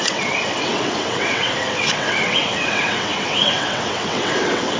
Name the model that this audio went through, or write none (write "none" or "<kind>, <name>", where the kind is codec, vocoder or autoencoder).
vocoder, WaveNeXt